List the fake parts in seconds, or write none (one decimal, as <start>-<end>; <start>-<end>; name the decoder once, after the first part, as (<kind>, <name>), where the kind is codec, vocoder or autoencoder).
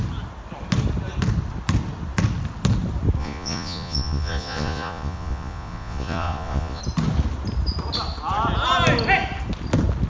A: 3.2-6.8 (vocoder, Vocos)